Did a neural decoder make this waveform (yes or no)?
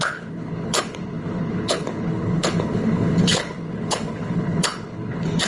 yes